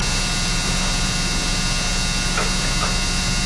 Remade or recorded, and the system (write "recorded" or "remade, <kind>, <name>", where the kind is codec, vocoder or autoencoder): recorded